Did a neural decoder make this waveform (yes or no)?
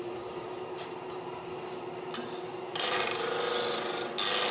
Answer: no